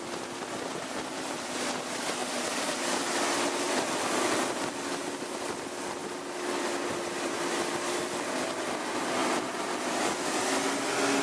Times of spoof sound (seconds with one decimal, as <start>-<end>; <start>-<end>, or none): none

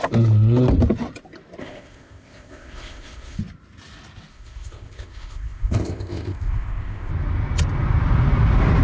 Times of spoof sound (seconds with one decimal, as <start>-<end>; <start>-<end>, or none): 1.6-3.4; 4.3-7.1

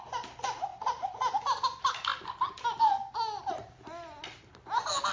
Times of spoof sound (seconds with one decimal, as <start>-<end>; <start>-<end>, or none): none

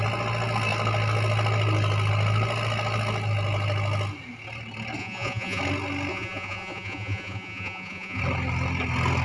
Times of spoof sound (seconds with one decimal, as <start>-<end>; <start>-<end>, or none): 5.0-5.6; 6.1-8.2

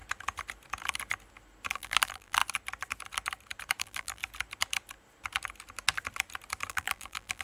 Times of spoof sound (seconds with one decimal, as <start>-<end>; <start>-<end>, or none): 1.7-2.4; 3.8-4.2; 6.7-7.4

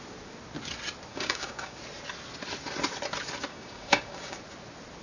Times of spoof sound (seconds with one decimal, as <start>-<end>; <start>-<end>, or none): 1.1-1.8; 3.5-4.4

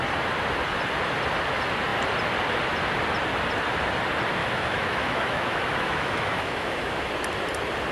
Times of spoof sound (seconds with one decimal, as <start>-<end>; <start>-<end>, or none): 4.4-7.1

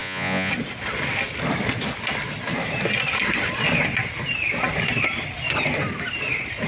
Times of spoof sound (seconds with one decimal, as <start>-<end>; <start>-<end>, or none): 0.0-0.5